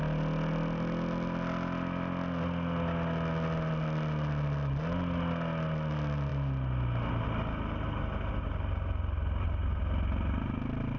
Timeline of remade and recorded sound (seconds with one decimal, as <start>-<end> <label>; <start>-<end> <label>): 0.0-11.0 recorded